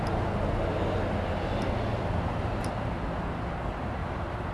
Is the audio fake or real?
real